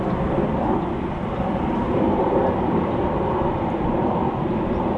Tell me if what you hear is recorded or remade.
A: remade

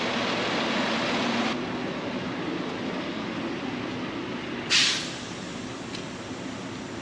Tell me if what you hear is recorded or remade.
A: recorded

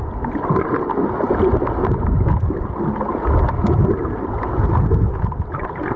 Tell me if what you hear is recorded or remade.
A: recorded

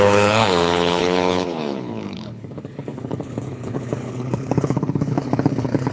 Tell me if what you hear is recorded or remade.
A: remade